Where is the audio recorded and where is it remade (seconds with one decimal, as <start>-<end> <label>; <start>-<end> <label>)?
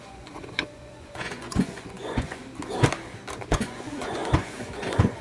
0.0-2.4 remade; 2.4-3.5 recorded; 3.5-5.2 remade